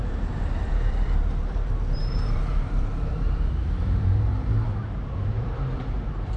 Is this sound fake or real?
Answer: fake